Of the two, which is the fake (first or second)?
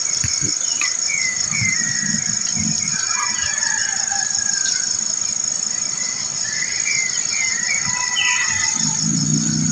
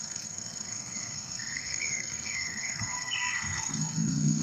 second